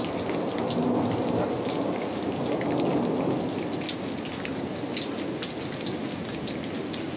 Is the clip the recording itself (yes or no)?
yes